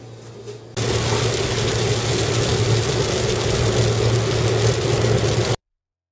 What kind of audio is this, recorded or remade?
recorded